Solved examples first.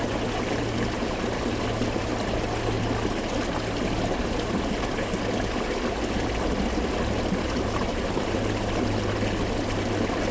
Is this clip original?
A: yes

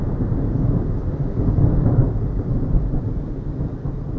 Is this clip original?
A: yes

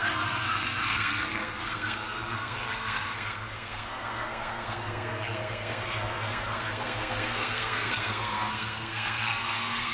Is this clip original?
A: no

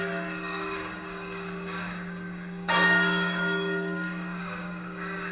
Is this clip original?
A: no